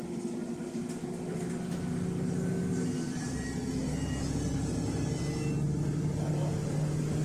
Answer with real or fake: real